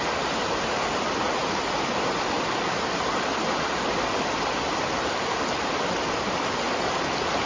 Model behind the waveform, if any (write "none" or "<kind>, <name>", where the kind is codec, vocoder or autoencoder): none